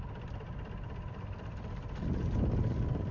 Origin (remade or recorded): recorded